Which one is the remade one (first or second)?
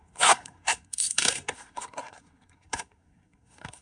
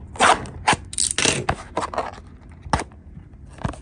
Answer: first